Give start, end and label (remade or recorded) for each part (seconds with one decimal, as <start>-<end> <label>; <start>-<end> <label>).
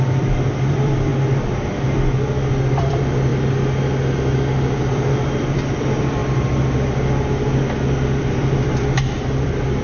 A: 0.0-1.1 remade; 1.1-2.7 recorded; 2.7-3.3 remade; 3.3-4.9 recorded; 4.9-6.2 remade; 6.2-8.2 recorded; 8.2-9.8 remade